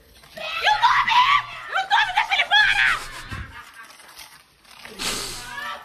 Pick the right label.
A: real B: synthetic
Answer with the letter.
A